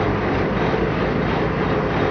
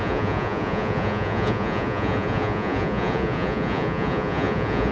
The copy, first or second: second